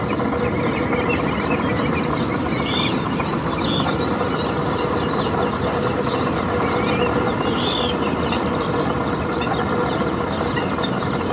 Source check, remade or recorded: recorded